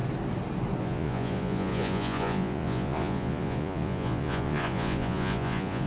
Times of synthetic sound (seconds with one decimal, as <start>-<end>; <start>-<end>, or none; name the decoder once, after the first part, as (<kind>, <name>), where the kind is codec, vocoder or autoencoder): 0.8-5.9 (vocoder, Vocos)